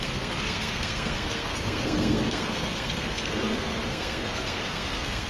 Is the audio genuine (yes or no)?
no